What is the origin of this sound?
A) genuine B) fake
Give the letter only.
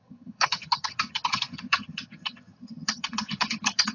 B